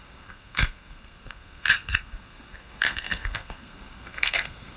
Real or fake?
fake